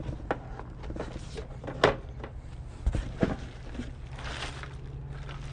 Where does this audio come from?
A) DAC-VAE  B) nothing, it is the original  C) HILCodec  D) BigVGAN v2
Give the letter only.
B